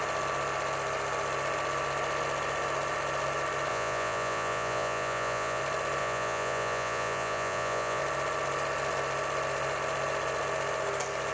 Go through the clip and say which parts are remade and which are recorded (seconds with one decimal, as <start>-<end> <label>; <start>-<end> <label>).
0.0-3.7 recorded; 3.7-5.6 remade; 5.6-6.0 recorded; 6.0-8.0 remade; 8.0-11.3 recorded